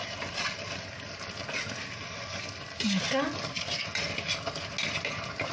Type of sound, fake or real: real